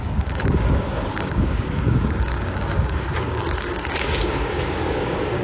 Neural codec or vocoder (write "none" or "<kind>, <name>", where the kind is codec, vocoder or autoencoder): codec, DAC